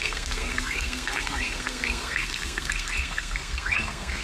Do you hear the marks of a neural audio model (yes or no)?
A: yes